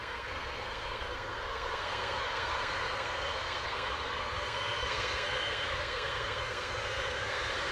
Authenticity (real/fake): fake